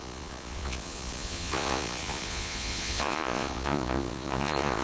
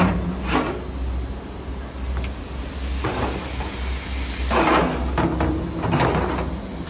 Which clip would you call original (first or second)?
second